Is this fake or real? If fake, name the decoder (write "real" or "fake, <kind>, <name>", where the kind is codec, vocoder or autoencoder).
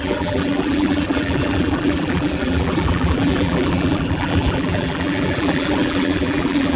fake, vocoder, BigVGAN v2